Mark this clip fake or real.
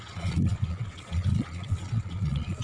fake